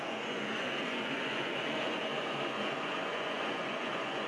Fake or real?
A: fake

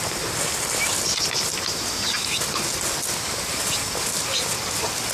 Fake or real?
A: real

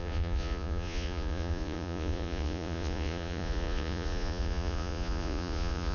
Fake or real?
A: fake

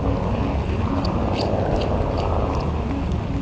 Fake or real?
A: real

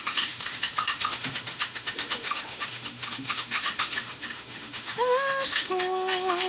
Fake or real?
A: fake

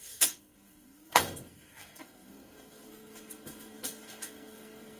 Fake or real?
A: fake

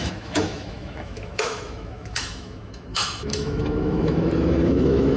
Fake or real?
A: fake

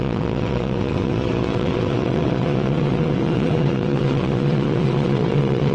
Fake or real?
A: fake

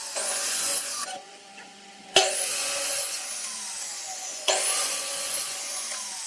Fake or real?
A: fake